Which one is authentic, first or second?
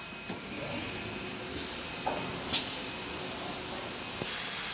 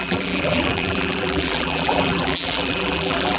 first